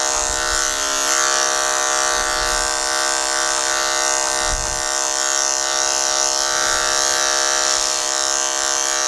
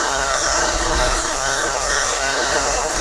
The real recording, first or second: first